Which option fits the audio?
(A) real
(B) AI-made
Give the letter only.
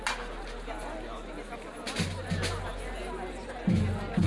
A